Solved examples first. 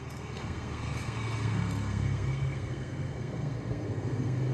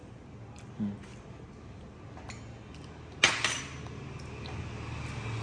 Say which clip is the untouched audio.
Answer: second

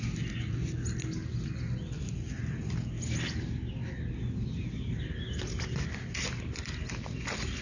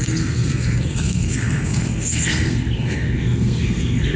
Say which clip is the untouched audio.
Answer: first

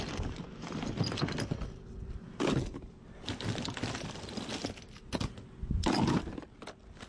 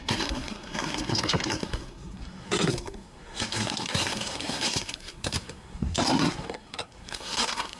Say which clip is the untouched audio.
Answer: first